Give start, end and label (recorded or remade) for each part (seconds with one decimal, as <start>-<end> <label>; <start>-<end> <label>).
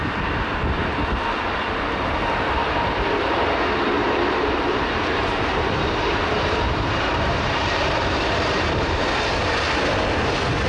0.0-4.0 recorded; 4.0-9.1 remade; 9.1-10.7 recorded